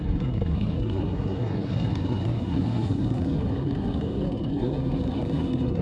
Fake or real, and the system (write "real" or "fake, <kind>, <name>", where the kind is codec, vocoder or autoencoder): fake, codec, SNAC